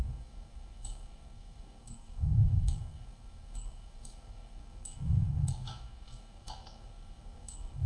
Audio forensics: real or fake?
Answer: fake